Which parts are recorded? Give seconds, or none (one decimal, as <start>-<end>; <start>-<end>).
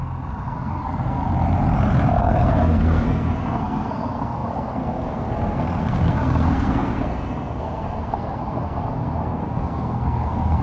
1.2-2.2